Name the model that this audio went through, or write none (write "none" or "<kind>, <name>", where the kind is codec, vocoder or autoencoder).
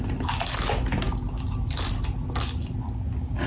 none